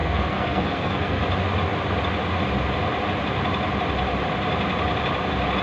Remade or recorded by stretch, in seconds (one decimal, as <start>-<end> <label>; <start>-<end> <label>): 0.0-1.2 remade; 1.2-5.6 recorded